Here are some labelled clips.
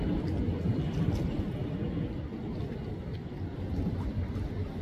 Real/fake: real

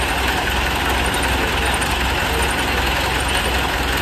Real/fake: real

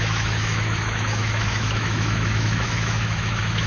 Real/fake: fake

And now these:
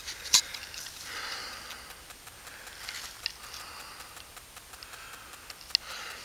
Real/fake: real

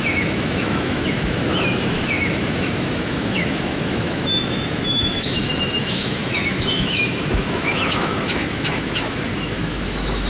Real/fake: fake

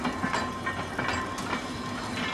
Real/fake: real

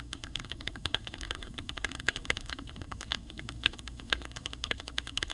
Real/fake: fake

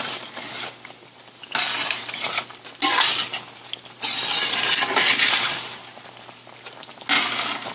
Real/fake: real